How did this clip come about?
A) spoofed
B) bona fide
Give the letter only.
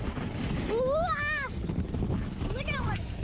B